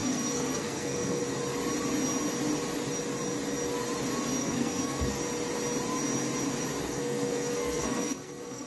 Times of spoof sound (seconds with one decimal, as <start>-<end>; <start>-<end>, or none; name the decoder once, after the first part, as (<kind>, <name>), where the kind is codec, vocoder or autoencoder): 0.0-1.2 (codec, SNAC); 4.4-5.2; 6.8-8.7